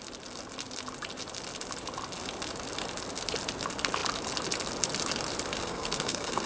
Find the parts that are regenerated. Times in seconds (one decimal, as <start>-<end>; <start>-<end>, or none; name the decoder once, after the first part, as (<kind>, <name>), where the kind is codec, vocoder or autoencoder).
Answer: 5.6-6.5 (codec, SNAC)